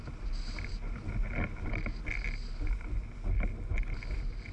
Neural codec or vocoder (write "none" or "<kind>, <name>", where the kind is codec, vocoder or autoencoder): none